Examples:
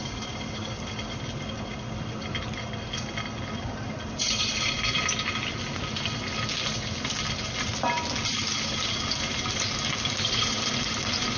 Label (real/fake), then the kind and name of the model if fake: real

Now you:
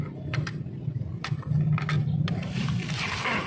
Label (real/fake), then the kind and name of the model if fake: real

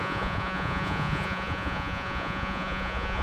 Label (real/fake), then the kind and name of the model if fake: fake, vocoder, Vocos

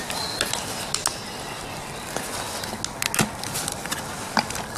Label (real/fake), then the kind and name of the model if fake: real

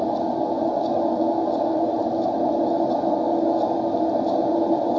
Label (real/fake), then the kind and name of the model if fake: real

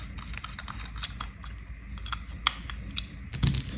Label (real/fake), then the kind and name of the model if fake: real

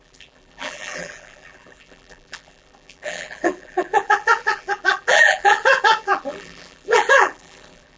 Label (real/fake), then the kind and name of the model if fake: fake, vocoder, BigVGAN v2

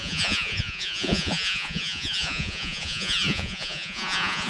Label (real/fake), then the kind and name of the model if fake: fake, vocoder, Vocos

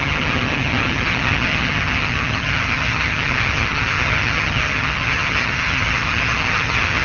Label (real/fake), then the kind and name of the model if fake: fake, vocoder, HiFi-GAN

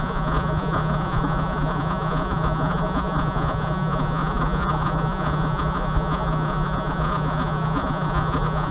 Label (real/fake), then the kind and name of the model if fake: fake, vocoder, Vocos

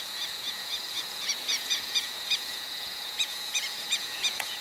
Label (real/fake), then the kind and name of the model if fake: fake, vocoder, Vocos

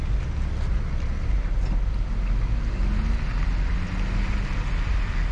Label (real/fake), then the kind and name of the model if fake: real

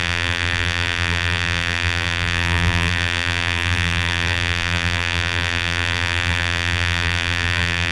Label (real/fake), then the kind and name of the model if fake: fake, vocoder, BigVGAN v2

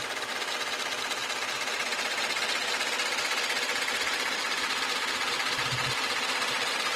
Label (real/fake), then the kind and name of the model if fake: real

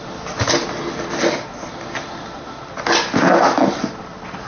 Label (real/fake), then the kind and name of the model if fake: real